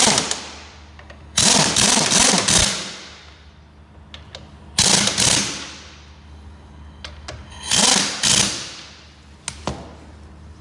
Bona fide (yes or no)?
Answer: yes